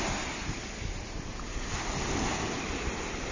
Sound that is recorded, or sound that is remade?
recorded